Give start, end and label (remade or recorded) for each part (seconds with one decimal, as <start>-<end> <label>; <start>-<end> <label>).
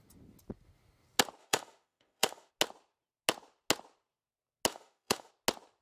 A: 0.0-1.4 recorded; 1.4-2.5 remade; 2.5-4.7 recorded; 4.7-5.3 remade; 5.3-5.8 recorded